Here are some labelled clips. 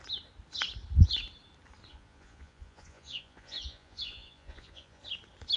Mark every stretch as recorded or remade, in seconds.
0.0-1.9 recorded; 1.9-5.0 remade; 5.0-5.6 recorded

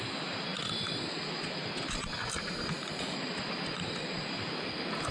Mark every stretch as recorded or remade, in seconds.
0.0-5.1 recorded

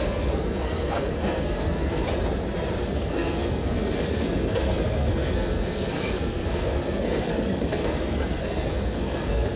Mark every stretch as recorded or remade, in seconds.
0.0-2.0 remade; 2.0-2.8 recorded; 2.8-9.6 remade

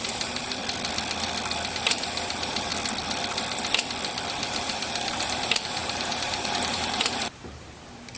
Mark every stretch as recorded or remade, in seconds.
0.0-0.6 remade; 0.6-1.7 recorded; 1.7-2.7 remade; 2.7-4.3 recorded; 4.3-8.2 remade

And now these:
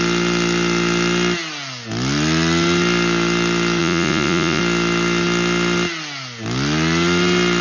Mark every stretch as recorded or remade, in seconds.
0.0-3.8 recorded; 3.8-4.6 remade; 4.6-7.6 recorded

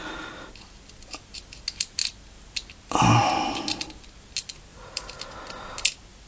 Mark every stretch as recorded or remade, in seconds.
0.0-4.7 recorded; 4.7-5.2 remade; 5.2-6.3 recorded